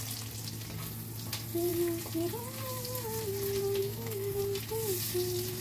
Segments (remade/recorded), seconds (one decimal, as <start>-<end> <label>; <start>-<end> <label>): 0.0-3.8 recorded; 3.8-4.4 remade; 4.4-5.6 recorded

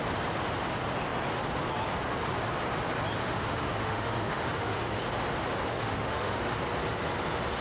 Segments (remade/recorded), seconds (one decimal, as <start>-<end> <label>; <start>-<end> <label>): 0.0-3.2 recorded; 3.2-5.0 remade; 5.0-5.7 recorded; 5.7-6.4 remade; 6.4-7.6 recorded

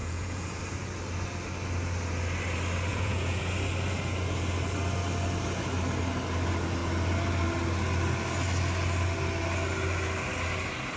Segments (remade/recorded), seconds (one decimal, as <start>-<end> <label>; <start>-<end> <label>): 0.0-0.6 remade; 0.6-2.9 recorded; 2.9-3.4 remade; 3.4-11.0 recorded